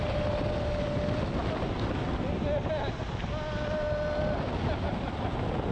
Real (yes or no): yes